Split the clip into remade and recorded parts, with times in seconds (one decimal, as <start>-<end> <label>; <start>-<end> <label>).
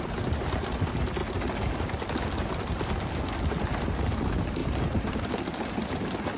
0.0-4.6 recorded; 4.6-5.7 remade; 5.7-6.4 recorded